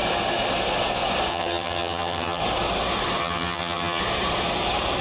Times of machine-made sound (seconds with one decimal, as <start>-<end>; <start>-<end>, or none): 1.3-2.4; 3.2-4.0